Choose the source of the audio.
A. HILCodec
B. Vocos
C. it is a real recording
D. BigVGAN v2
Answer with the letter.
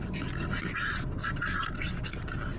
C